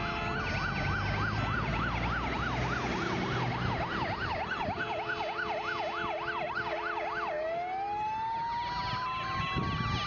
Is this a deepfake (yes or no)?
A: no